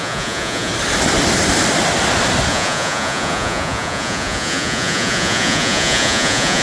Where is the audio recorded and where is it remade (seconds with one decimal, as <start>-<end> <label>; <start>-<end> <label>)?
0.0-0.7 remade; 0.7-2.5 recorded; 2.5-6.6 remade